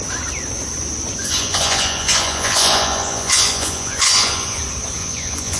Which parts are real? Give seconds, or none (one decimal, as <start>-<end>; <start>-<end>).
0.0-1.2; 4.6-5.0